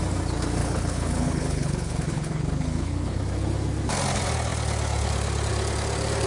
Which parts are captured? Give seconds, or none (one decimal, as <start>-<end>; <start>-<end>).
0.0-0.6; 3.2-6.3